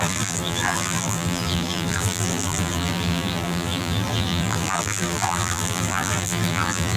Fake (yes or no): yes